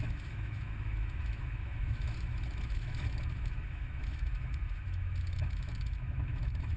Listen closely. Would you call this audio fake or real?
fake